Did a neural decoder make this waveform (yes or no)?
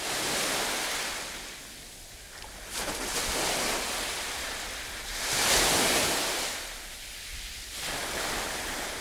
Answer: no